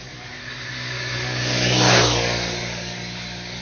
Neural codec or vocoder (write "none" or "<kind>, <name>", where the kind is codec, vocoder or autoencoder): codec, DAC